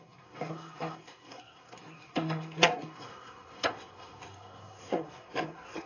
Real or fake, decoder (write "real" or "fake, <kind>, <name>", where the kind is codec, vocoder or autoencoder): fake, codec, SNAC